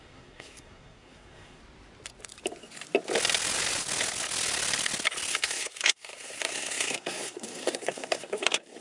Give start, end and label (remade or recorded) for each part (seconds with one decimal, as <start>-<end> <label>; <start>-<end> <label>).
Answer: 0.0-1.6 remade; 1.6-5.3 recorded; 5.3-8.8 remade